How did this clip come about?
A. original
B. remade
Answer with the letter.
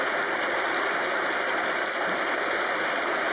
A